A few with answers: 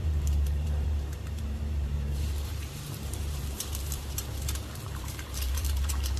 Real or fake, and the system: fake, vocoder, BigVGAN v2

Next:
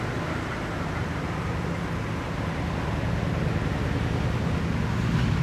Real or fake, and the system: real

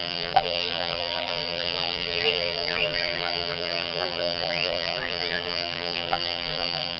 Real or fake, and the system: fake, vocoder, BigVGAN v2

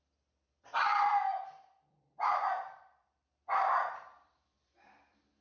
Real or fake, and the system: fake, vocoder, BigVGAN v2